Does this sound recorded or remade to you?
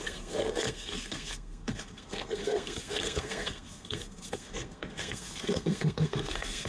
remade